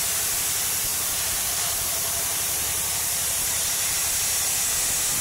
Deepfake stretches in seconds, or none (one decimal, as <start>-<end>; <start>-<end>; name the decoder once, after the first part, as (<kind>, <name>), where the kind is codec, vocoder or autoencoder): 0.9-4.0 (vocoder, BigVGAN v2)